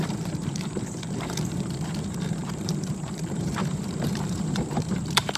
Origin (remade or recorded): remade